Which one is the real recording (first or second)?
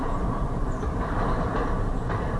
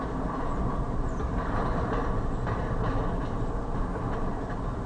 second